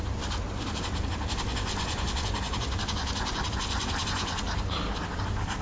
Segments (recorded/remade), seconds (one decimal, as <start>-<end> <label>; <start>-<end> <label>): 0.0-1.5 recorded; 1.5-4.4 remade; 4.4-5.6 recorded